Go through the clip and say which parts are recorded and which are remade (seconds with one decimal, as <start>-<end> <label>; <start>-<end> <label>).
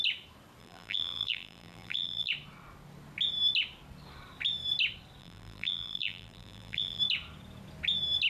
0.0-0.6 recorded; 0.6-2.3 remade; 2.3-5.2 recorded; 5.2-7.0 remade; 7.0-8.3 recorded